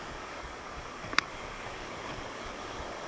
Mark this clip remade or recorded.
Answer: remade